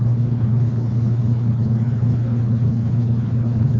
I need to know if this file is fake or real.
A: fake